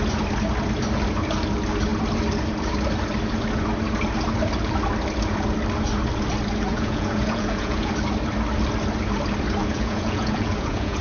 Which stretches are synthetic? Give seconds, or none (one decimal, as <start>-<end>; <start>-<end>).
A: 6.7-7.9; 9.6-11.0